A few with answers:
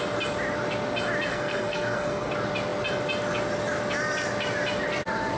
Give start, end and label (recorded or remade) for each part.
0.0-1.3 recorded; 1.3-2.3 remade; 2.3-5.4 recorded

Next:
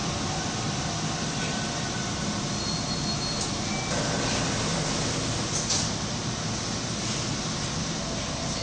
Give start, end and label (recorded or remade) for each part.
0.0-8.6 recorded

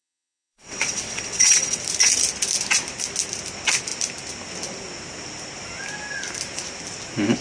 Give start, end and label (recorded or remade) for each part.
0.0-1.8 remade; 1.8-7.4 recorded

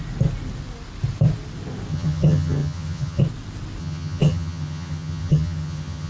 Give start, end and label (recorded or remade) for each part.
0.0-1.9 recorded; 1.9-3.2 remade; 3.2-3.8 recorded; 3.8-6.1 remade

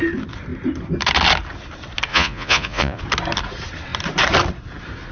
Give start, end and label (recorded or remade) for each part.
0.0-2.1 recorded; 2.1-3.0 remade; 3.0-5.1 recorded

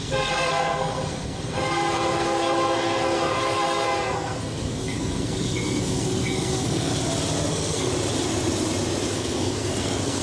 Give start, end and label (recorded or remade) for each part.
0.0-6.9 remade; 6.9-7.5 recorded; 7.5-7.9 remade; 7.9-9.1 recorded; 9.1-10.2 remade

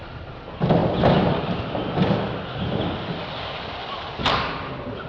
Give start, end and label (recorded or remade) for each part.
0.0-5.1 recorded

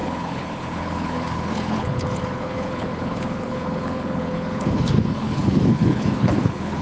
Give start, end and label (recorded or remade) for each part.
0.0-6.8 remade